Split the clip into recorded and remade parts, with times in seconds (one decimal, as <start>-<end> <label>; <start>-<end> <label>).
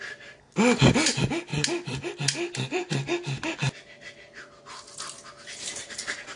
0.0-6.4 recorded